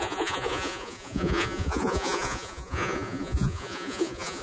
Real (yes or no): no